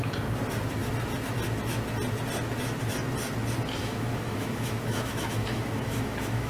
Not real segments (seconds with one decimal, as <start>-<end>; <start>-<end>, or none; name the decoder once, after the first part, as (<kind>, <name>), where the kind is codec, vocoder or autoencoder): 3.8-6.5 (autoencoder, DAC-VAE)